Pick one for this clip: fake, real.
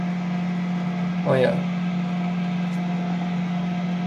real